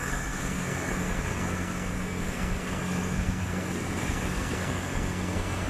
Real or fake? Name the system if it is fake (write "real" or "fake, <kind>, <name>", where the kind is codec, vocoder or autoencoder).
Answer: fake, codec, SNAC